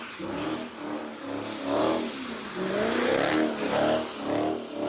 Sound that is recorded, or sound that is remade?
recorded